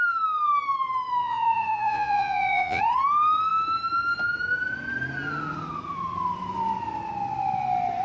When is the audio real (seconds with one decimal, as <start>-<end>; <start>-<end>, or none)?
0.0-1.2; 2.8-8.0